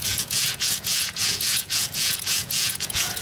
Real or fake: fake